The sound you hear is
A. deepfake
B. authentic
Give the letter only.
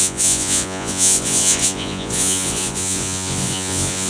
A